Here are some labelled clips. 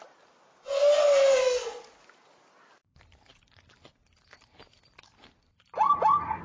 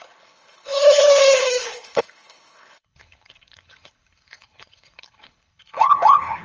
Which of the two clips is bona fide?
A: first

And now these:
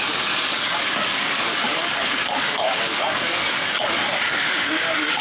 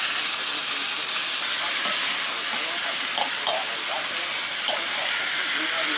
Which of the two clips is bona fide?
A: second